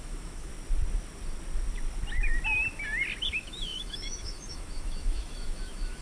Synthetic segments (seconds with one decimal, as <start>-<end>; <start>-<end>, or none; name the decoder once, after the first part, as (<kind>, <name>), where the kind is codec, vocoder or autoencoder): 0.0-0.5 (autoencoder, DAC-VAE); 3.3-6.0